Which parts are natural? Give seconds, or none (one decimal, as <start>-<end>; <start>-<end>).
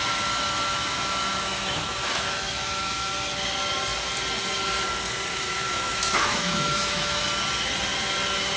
0.0-0.7; 3.1-5.3; 7.2-8.6